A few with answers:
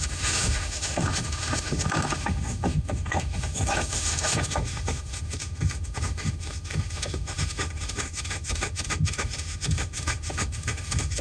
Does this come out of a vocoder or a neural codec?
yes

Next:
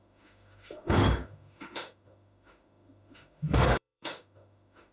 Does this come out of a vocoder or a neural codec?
yes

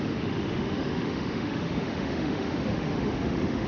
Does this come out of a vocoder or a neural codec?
yes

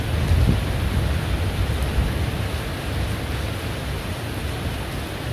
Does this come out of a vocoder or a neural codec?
no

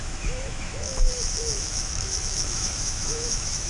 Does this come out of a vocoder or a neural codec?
yes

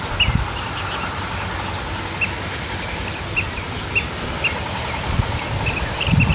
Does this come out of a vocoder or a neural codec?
no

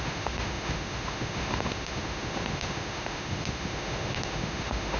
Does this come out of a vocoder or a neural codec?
yes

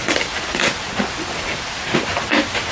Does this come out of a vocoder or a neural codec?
no